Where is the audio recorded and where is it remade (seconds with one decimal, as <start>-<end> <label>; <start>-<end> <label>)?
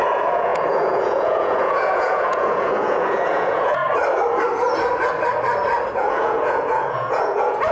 0.0-3.8 remade; 3.8-5.9 recorded; 5.9-7.7 remade